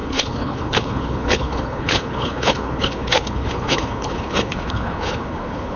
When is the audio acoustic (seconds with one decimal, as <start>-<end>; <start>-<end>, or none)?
none